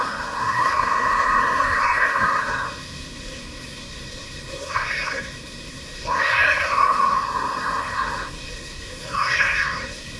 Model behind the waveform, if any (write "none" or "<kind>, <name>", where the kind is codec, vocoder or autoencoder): codec, SNAC